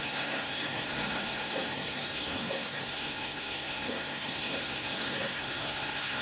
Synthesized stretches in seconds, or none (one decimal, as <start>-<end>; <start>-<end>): 0.0-6.2